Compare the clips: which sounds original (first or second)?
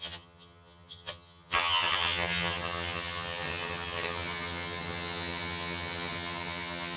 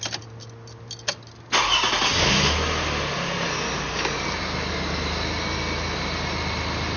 second